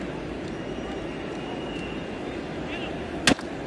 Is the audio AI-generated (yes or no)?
no